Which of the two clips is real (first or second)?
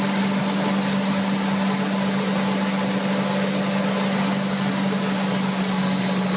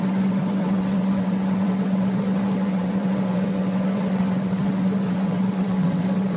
first